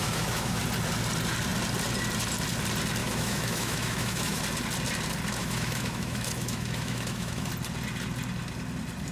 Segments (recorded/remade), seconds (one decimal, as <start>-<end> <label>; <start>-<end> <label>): 0.0-0.6 remade; 0.6-3.0 recorded; 3.0-4.4 remade; 4.4-5.4 recorded; 5.4-7.5 remade; 7.5-9.1 recorded